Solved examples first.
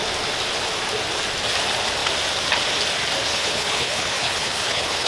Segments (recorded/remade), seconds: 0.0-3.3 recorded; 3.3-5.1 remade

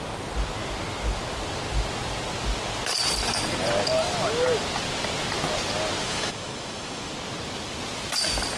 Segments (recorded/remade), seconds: 0.0-6.0 recorded; 6.0-7.1 remade; 7.1-8.6 recorded

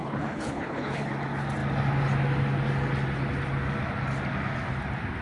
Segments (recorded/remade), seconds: 0.0-1.1 remade; 1.1-5.2 recorded

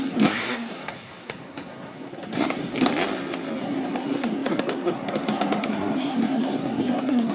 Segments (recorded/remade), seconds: 0.0-2.9 remade; 2.9-3.6 recorded; 3.6-7.3 remade

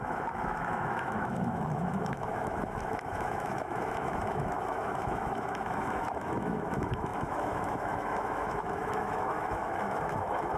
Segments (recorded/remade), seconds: 0.0-10.6 remade

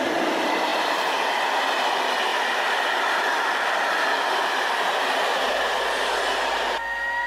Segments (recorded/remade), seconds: 0.0-7.3 recorded